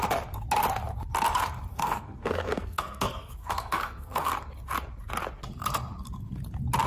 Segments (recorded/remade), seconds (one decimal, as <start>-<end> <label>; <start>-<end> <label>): 0.0-1.7 recorded; 1.7-4.3 remade; 4.3-6.9 recorded